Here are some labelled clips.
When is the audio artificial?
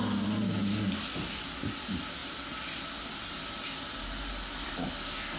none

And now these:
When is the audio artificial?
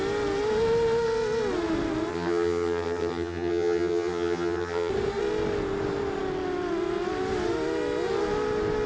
2.1-4.9 (vocoder, HiFi-GAN)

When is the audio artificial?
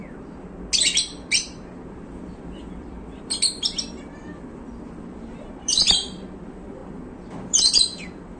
2.0-8.4 (vocoder, BigVGAN v2)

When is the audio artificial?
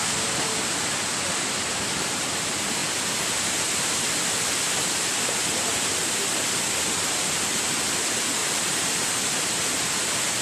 8.4-9.8 (vocoder, BigVGAN v2)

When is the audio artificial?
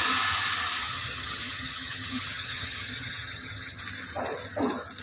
0.8-3.8 (vocoder, HiFi-GAN)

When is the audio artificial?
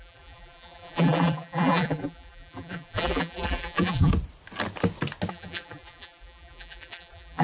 0.0-4.1 (vocoder, BigVGAN v2); 5.3-7.4